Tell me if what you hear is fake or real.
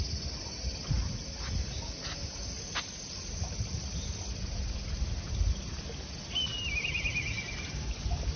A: real